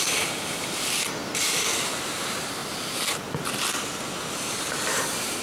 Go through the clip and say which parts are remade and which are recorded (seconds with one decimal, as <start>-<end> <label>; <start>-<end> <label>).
0.0-5.4 remade